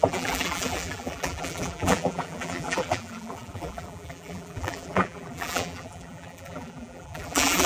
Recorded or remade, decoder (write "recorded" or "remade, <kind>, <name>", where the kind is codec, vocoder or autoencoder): remade, vocoder, BigVGAN v2